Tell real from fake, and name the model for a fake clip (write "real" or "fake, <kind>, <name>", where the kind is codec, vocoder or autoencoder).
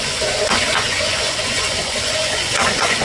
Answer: fake, vocoder, Vocos